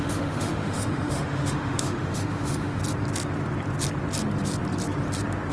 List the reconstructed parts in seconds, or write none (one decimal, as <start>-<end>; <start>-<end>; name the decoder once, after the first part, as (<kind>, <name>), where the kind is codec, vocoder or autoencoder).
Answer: 0.0-2.8 (autoencoder, DAC-VAE)